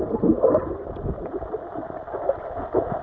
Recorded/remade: recorded